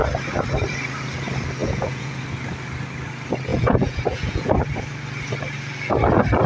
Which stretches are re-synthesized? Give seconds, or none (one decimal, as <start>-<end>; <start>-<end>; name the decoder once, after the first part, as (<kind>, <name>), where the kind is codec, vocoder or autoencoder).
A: 1.6-2.2 (vocoder, Vocos); 3.5-4.5